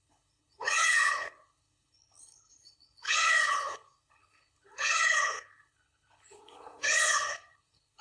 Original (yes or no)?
no